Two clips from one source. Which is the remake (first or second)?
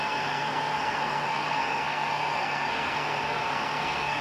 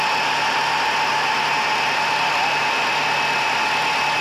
first